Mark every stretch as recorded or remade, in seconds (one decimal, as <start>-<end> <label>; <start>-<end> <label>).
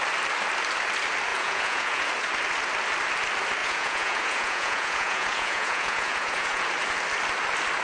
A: 0.0-1.3 recorded; 1.3-2.1 remade; 2.1-3.6 recorded; 3.6-6.6 remade; 6.6-7.8 recorded